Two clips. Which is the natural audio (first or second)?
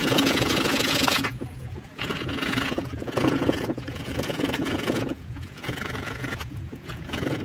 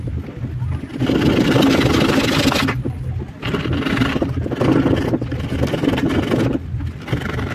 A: second